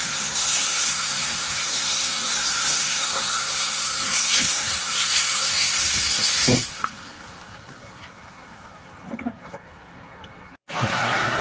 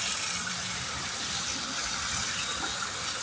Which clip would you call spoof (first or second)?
first